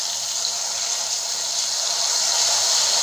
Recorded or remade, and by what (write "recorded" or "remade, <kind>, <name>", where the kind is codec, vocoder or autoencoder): recorded